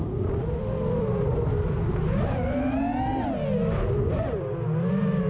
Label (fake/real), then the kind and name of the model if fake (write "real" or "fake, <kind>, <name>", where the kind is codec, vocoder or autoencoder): real